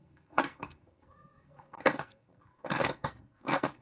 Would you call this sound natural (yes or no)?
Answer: no